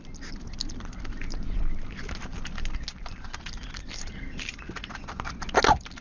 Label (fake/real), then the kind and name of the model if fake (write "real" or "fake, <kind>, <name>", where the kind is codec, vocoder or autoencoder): real